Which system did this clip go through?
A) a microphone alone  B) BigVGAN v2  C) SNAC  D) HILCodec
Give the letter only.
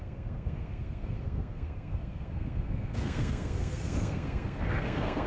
C